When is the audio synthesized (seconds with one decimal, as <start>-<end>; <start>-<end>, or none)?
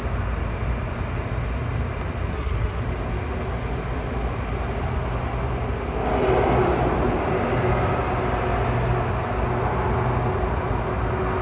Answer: 2.3-2.8